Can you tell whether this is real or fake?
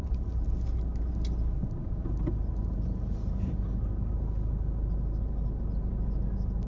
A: real